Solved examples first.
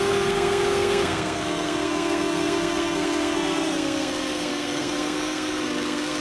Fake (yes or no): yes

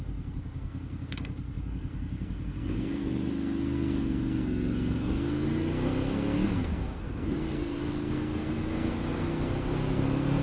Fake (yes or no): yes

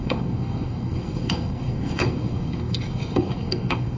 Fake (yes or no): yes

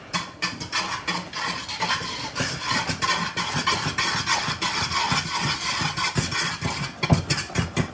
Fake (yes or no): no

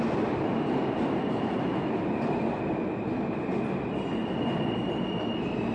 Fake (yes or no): no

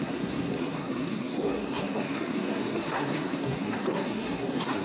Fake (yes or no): yes